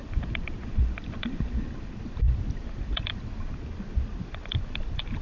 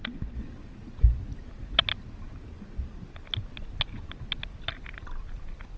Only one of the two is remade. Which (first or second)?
first